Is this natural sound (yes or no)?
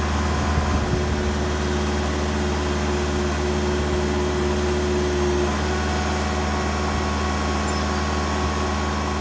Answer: yes